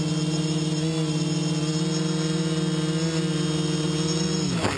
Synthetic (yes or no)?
no